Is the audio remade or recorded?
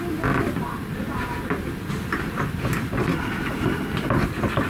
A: recorded